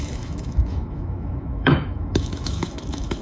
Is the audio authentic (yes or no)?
no